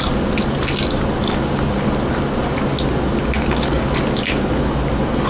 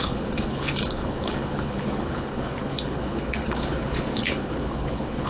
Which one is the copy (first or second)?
second